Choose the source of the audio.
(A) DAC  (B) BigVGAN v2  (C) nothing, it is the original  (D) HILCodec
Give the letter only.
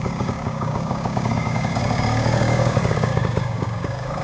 A